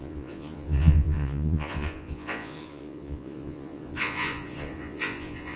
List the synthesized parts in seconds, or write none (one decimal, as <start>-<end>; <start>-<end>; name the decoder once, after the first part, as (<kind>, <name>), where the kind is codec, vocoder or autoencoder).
0.0-5.6 (vocoder, Vocos)